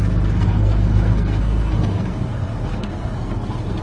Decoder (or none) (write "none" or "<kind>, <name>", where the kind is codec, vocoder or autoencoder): codec, SNAC